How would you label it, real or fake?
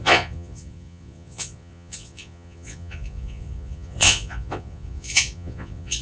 fake